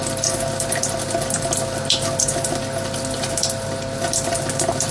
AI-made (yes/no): no